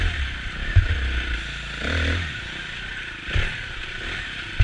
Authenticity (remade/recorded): recorded